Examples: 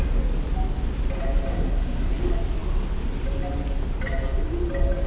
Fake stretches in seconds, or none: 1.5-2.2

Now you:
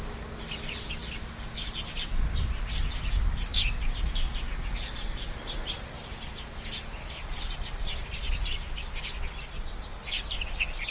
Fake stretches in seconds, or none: none

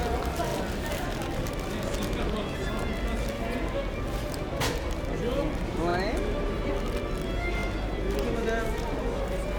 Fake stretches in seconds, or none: none

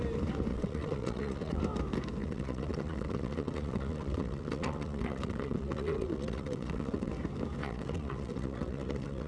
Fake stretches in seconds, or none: 0.5-1.6; 2.2-7.1; 7.6-9.3

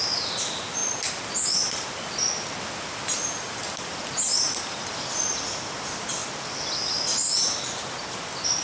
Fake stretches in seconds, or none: none

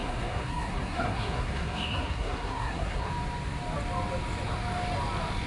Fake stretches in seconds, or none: 0.0-3.1

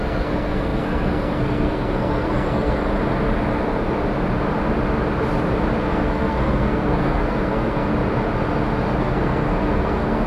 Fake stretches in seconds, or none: 0.0-2.8; 5.8-7.9; 9.0-10.3